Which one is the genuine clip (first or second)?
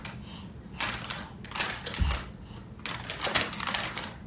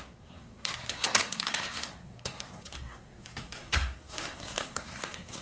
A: first